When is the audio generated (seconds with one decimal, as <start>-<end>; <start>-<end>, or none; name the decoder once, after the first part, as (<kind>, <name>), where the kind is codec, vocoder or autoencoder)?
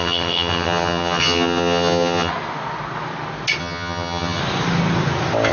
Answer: 0.0-2.3 (vocoder, HiFi-GAN); 3.6-4.4